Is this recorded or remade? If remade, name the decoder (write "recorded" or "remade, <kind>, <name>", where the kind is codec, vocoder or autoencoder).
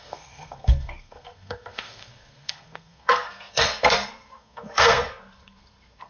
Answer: remade, codec, SNAC